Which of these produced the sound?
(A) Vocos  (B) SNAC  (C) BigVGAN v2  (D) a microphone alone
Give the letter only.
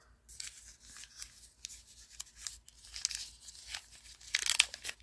D